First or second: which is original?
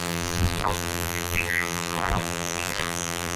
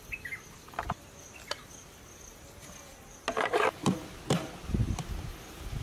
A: second